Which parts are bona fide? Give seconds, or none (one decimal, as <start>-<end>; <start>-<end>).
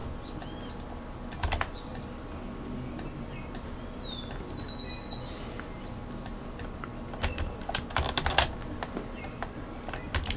0.0-10.4